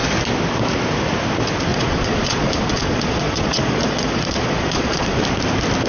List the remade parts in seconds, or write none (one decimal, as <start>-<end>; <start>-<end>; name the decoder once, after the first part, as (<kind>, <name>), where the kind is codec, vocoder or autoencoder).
1.7-5.2 (vocoder, Vocos)

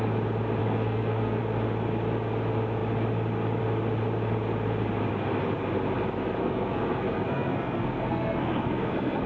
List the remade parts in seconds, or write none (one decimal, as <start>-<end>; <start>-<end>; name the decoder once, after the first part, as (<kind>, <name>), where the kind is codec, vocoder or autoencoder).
0.6-1.4 (codec, SNAC); 6.4-9.3